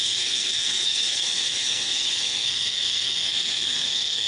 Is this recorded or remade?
remade